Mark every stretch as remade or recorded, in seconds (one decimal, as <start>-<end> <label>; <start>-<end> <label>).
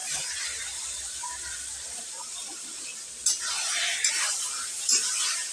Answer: 0.0-2.9 remade; 2.9-4.1 recorded; 4.1-5.5 remade